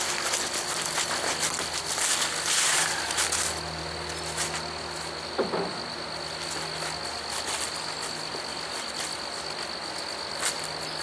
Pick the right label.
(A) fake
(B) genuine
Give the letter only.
B